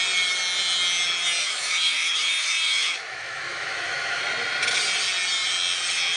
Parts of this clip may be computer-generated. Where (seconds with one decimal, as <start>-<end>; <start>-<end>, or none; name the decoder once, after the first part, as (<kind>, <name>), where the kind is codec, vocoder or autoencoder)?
1.4-4.2 (autoencoder, DAC-VAE)

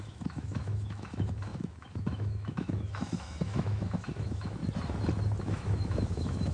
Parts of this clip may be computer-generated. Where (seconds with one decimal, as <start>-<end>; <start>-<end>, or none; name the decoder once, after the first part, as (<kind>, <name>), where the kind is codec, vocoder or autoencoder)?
0.0-4.6 (autoencoder, DAC-VAE); 5.4-6.5